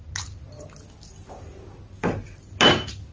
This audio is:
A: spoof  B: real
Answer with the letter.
B